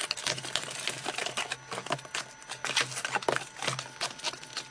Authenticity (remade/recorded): recorded